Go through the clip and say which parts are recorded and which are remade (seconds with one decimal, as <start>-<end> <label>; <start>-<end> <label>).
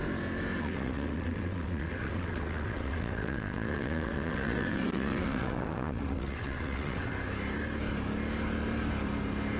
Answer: 0.0-0.6 recorded; 0.6-7.1 remade; 7.1-9.6 recorded